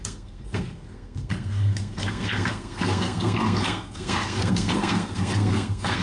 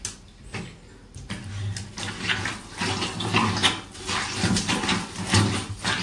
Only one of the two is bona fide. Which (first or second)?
second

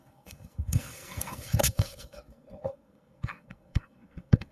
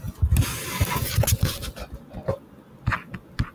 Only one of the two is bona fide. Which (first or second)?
second